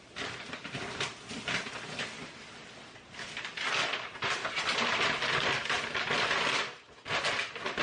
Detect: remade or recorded remade